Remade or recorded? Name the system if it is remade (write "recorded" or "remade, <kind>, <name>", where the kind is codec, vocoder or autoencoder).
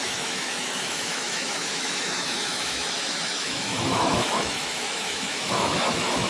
remade, autoencoder, DAC-VAE